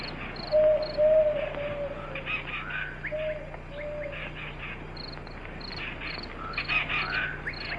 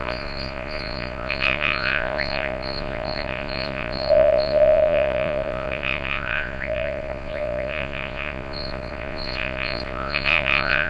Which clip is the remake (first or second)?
second